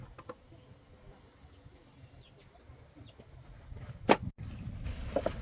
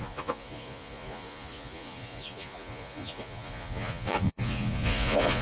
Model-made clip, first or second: second